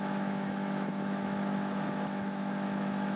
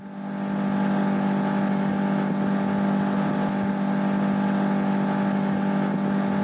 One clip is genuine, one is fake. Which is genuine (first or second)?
second